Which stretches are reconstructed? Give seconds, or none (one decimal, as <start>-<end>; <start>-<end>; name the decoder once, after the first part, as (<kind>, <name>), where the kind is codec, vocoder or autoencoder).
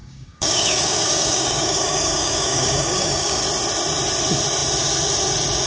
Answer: 0.0-3.4 (codec, DAC)